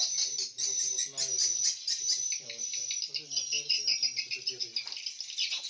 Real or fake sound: real